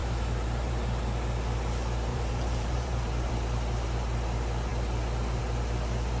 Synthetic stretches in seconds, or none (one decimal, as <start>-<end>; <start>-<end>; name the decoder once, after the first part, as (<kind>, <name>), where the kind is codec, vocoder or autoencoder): 0.0-0.7 (vocoder, BigVGAN v2); 2.1-3.3